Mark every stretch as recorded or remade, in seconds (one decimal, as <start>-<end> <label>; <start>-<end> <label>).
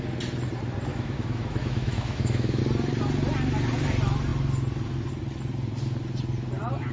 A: 0.0-0.9 recorded; 0.9-2.6 remade; 2.6-6.9 recorded